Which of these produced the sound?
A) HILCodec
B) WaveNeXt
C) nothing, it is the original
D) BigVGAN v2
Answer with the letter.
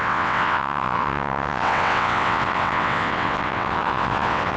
B